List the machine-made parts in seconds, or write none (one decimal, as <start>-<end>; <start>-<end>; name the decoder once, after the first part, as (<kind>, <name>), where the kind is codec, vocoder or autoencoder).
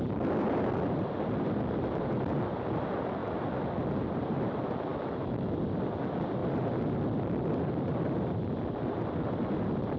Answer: 4.9-5.6 (autoencoder, DAC-VAE)